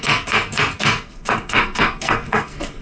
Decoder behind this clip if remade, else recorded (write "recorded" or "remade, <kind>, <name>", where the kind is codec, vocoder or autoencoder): remade, codec, SNAC